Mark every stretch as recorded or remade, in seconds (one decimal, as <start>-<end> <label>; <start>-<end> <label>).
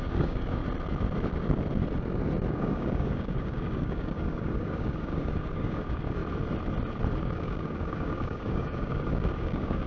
0.0-0.6 remade; 0.6-2.5 recorded; 2.5-6.2 remade; 6.2-7.2 recorded; 7.2-9.9 remade